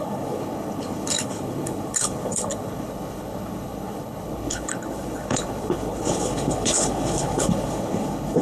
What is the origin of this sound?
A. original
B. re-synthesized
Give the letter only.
B